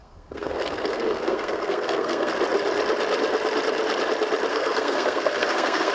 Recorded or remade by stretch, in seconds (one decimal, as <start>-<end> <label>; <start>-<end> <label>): 0.0-2.3 remade; 2.3-4.5 recorded; 4.5-5.9 remade